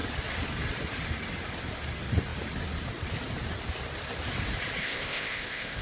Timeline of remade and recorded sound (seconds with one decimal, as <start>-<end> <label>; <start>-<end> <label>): 0.0-4.8 recorded; 4.8-5.8 remade